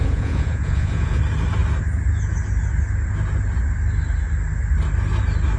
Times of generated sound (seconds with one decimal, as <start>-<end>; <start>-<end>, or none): 0.0-1.2